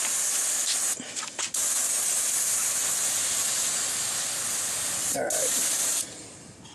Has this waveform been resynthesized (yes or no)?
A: no